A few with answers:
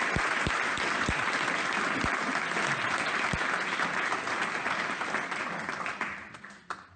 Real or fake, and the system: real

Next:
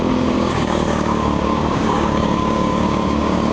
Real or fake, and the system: fake, codec, DAC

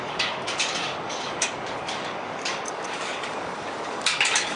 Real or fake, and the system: fake, codec, DAC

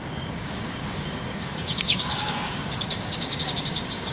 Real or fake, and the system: fake, codec, DAC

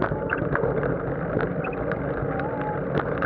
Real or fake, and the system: real